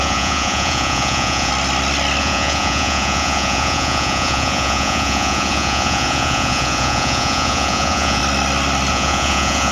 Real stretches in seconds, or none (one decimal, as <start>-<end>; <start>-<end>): 1.5-2.2; 8.2-8.9